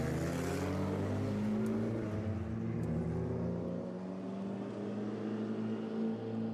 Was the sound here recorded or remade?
recorded